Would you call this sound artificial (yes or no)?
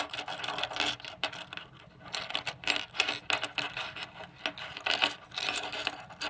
no